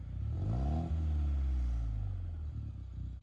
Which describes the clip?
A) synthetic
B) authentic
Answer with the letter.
B